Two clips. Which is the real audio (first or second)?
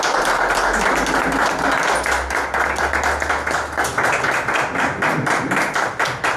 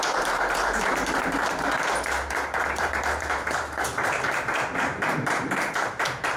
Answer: first